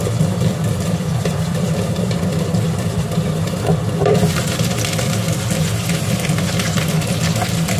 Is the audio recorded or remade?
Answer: remade